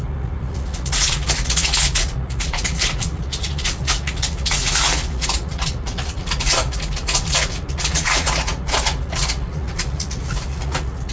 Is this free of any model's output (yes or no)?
no